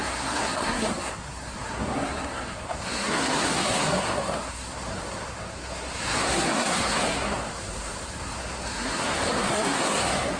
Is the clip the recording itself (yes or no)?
no